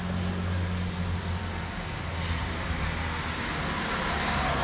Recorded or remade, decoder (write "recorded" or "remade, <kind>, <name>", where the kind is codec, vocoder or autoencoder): recorded